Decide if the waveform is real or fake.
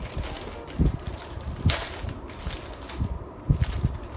real